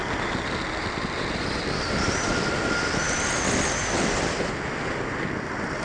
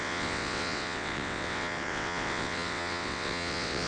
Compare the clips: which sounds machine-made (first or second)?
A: second